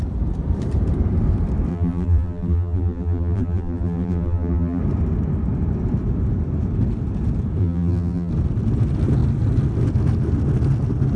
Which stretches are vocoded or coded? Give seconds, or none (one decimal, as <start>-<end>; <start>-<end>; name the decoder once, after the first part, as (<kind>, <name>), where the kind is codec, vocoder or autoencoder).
1.7-4.8 (vocoder, BigVGAN v2); 7.6-8.3